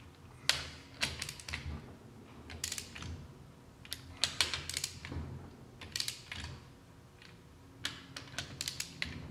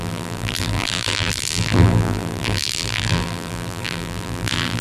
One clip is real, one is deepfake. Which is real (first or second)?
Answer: first